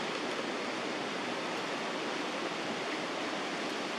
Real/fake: real